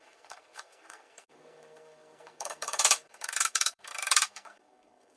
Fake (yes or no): yes